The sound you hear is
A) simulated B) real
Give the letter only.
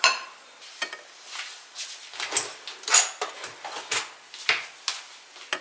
B